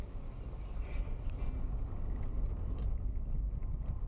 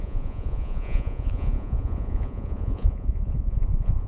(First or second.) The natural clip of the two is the first